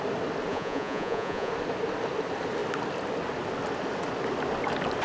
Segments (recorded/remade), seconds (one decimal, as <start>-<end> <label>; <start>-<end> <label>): 0.0-0.5 recorded; 0.5-1.5 remade; 1.5-5.0 recorded